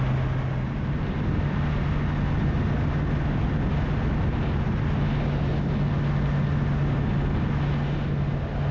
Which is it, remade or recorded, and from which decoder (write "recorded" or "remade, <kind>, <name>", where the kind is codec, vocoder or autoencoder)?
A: recorded